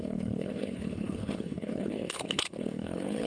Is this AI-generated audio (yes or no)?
yes